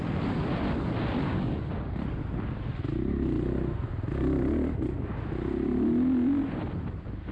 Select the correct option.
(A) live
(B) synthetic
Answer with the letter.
A